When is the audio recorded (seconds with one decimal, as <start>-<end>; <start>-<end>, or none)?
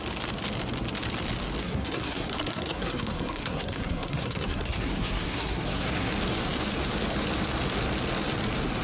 0.0-1.6; 6.1-8.8